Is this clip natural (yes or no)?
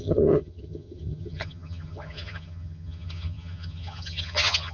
no